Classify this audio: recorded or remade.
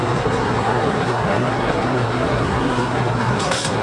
remade